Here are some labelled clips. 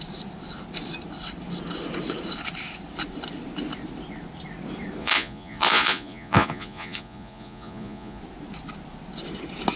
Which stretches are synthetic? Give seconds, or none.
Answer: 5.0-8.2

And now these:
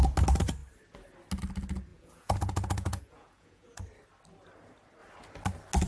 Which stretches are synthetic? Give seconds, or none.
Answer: 1.9-3.8